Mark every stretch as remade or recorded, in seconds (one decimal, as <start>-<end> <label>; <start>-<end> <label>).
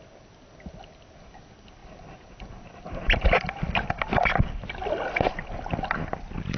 0.0-6.6 recorded